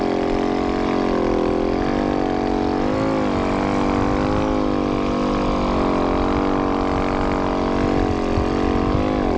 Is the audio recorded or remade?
recorded